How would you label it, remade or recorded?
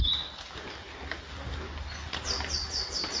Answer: recorded